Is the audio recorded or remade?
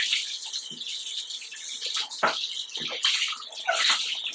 recorded